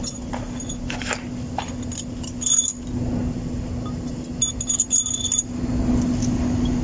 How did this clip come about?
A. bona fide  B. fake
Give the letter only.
A